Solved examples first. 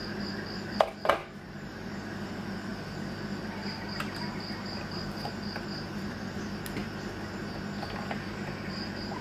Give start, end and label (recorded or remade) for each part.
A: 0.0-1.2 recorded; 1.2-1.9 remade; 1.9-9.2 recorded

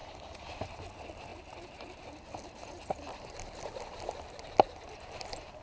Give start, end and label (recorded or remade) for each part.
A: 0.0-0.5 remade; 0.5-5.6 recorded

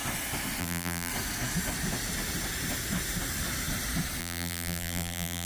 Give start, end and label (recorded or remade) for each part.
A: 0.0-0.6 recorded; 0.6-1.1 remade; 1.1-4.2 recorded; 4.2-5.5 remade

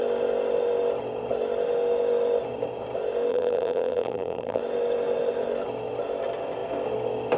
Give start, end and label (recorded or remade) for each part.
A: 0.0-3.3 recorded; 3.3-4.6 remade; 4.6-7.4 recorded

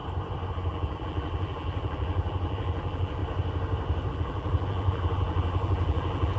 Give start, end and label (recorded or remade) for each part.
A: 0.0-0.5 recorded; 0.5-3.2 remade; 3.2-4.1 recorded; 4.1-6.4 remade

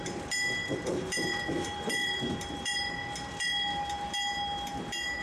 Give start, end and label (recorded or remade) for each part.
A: 0.0-0.6 recorded; 0.6-2.8 remade; 2.8-5.2 recorded

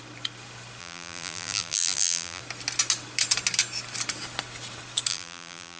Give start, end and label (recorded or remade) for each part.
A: 0.0-0.8 recorded; 0.8-2.4 remade; 2.4-5.1 recorded; 5.1-5.8 remade